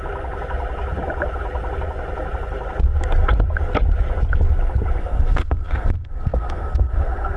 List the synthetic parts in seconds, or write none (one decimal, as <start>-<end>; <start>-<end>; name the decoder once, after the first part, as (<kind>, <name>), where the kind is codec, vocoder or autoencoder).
5.0-7.4 (codec, SNAC)